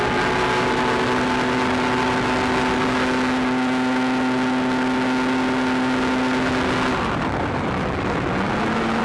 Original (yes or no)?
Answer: yes